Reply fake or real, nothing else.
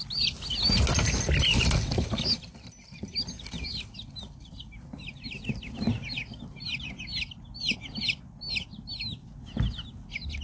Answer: real